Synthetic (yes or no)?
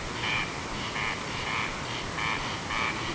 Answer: no